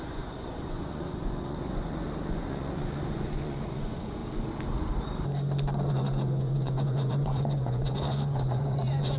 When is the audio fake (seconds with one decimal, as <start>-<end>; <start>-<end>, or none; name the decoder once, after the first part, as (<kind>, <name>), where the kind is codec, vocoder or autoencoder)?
0.0-4.2 (vocoder, Vocos); 5.9-9.2